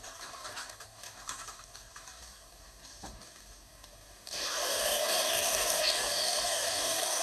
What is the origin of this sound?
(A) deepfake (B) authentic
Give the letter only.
A